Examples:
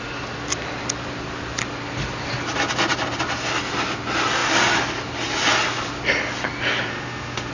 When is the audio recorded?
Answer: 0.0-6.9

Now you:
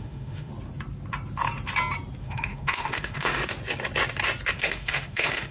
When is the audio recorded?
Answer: 0.5-2.2; 3.4-4.5